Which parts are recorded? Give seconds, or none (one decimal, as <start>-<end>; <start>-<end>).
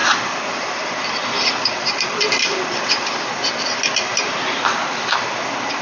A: 3.5-5.8